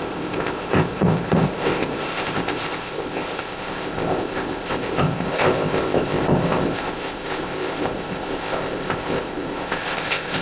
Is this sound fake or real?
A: fake